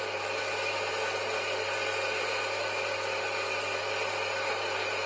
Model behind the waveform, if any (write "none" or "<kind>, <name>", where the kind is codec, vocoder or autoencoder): none